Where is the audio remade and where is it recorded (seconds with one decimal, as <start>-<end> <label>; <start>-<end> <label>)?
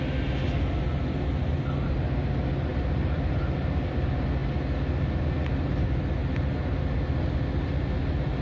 0.0-2.7 recorded; 2.7-3.4 remade; 3.4-8.4 recorded